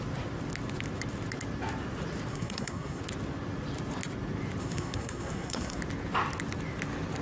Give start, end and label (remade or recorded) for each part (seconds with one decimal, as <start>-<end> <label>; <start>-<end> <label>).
0.0-2.3 recorded; 2.3-3.0 remade; 3.0-4.6 recorded; 4.6-5.8 remade; 5.8-7.2 recorded

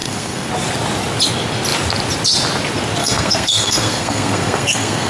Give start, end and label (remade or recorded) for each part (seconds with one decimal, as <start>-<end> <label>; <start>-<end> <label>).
0.0-0.5 remade; 0.5-3.0 recorded; 3.0-5.1 remade

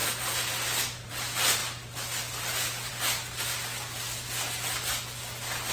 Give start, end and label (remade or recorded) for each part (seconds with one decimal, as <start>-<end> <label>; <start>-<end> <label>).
0.0-5.7 recorded

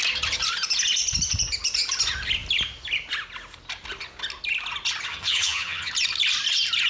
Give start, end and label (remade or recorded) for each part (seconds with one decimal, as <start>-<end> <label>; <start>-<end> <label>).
0.0-5.1 recorded; 5.1-5.9 remade; 5.9-6.9 recorded

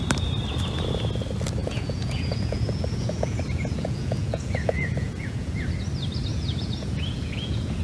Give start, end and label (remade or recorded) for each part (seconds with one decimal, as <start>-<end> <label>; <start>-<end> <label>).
0.0-1.6 recorded; 1.6-5.7 remade; 5.7-6.3 recorded; 6.3-7.8 remade

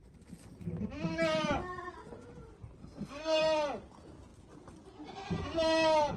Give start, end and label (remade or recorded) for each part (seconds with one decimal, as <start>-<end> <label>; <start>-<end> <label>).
0.0-2.8 recorded; 2.8-3.4 remade; 3.4-6.2 recorded

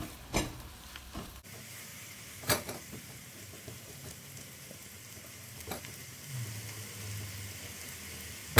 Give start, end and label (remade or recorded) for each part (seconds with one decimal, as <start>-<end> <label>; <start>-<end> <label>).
0.0-6.3 remade; 6.3-8.6 recorded